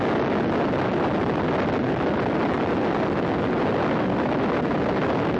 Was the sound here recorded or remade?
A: recorded